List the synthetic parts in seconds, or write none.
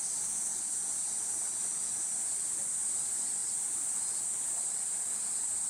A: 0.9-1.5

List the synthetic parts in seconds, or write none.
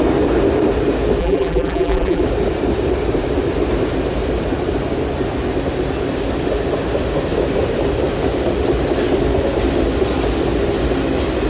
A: 1.2-2.2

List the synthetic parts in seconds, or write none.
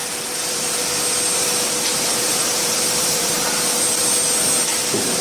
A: 0.0-0.8; 1.9-3.6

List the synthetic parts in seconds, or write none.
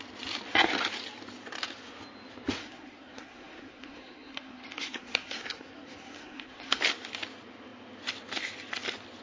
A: 2.6-6.8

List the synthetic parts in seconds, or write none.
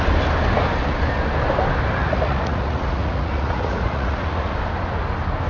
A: 2.0-4.5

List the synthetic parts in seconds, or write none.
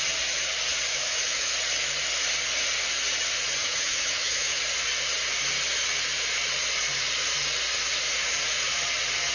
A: 0.9-1.5; 3.6-4.6